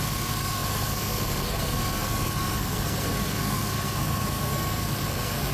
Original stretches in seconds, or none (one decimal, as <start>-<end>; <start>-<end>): none